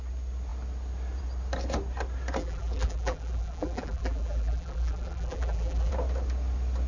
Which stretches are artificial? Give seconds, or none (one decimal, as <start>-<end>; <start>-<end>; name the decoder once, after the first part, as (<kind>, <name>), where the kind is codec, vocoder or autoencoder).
2.4-5.9 (vocoder, BigVGAN v2)